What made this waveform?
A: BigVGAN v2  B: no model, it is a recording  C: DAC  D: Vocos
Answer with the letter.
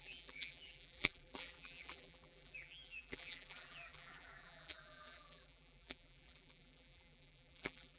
A